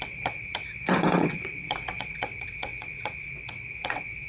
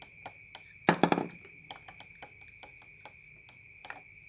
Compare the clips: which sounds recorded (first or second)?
second